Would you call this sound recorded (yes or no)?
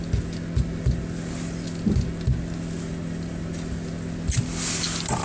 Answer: yes